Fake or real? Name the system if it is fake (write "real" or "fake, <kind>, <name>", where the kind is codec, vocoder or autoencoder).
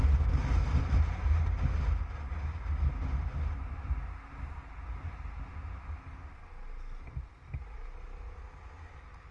real